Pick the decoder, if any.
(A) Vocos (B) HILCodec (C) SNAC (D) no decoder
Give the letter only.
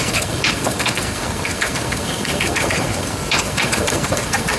C